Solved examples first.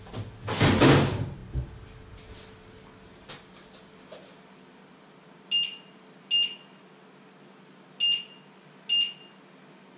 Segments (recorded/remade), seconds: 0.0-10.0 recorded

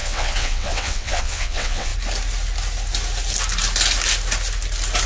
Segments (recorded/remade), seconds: 0.0-1.9 remade; 1.9-5.1 recorded

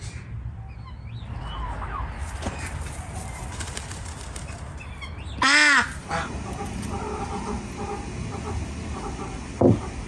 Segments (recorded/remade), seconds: 0.0-10.1 recorded

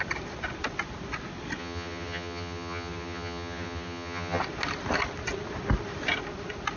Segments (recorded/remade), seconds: 0.0-1.6 recorded; 1.6-4.4 remade; 4.4-6.8 recorded

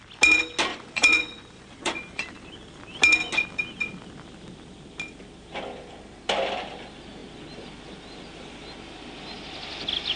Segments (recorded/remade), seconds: 0.0-0.7 recorded; 0.7-2.2 remade; 2.2-10.2 recorded